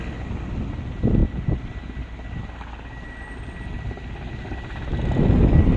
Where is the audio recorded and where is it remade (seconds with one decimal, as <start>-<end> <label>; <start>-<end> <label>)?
0.0-5.8 recorded